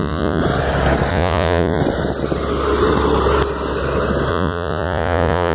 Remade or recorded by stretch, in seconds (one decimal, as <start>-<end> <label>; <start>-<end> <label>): 0.0-0.4 remade; 0.4-1.1 recorded; 1.1-1.8 remade; 1.8-4.3 recorded; 4.3-5.5 remade